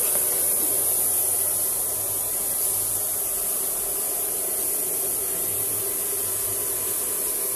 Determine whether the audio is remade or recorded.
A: recorded